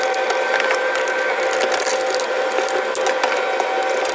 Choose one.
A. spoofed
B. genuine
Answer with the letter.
B